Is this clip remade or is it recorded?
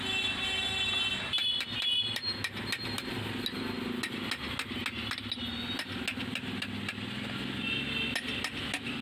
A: recorded